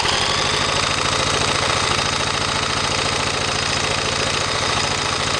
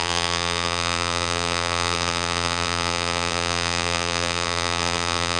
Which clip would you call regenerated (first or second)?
second